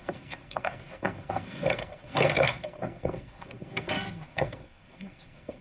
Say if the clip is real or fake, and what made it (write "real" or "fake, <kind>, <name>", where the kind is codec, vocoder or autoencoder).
fake, codec, SNAC